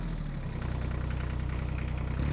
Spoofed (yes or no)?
no